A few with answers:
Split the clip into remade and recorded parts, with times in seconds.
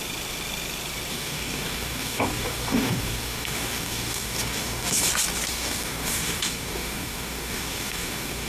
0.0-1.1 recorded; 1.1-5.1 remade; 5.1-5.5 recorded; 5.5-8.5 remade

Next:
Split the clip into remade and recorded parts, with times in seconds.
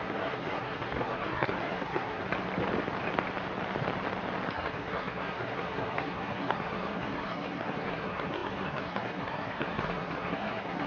0.0-2.2 remade; 2.2-4.5 recorded; 4.5-10.9 remade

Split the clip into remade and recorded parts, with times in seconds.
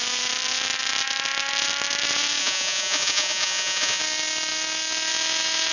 0.0-2.4 recorded; 2.4-4.0 remade; 4.0-5.7 recorded